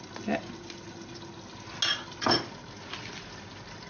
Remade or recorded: recorded